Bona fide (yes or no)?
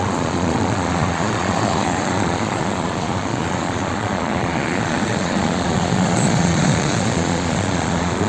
no